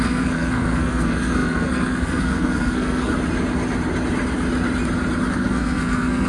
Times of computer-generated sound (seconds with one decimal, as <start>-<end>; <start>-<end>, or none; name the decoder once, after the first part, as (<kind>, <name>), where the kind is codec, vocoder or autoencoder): 0.0-3.1 (codec, SNAC); 5.3-6.3